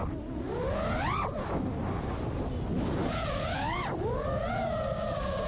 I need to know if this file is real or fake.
real